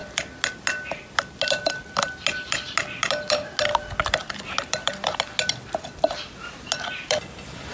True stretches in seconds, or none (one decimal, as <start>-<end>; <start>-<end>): 0.0-7.7